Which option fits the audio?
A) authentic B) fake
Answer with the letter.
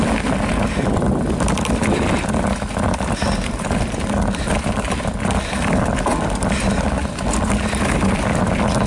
A